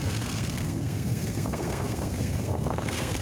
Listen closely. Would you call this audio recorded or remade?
remade